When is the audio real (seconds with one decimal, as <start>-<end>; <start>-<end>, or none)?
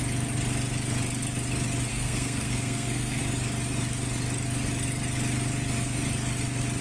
0.0-1.9; 3.2-6.8